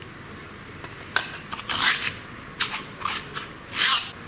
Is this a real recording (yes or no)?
yes